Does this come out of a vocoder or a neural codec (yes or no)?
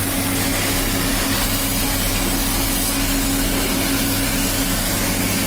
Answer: no